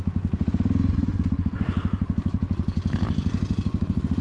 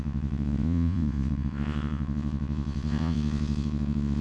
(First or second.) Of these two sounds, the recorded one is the first